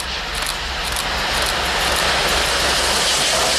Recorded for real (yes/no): yes